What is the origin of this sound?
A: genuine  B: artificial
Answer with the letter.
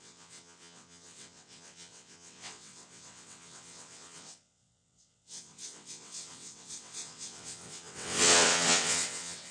B